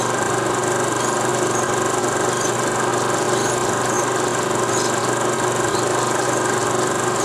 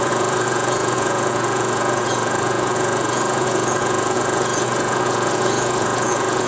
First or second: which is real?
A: first